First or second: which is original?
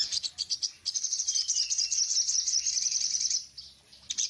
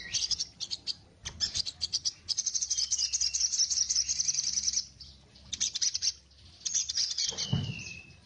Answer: first